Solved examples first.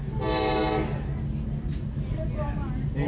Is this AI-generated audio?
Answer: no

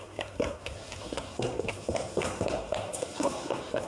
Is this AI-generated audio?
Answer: yes